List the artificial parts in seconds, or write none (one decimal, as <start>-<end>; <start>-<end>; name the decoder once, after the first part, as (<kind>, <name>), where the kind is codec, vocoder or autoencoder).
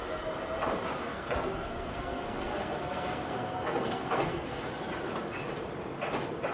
1.0-4.7 (codec, SNAC)